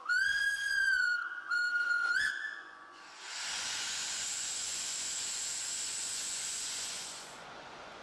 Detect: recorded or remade remade